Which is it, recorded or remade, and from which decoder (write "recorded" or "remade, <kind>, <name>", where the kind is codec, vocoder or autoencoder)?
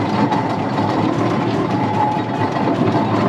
recorded